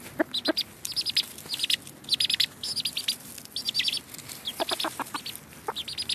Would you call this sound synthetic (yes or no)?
no